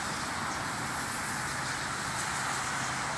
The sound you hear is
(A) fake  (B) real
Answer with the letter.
B